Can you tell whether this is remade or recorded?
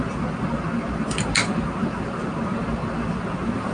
recorded